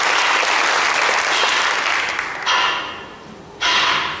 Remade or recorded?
recorded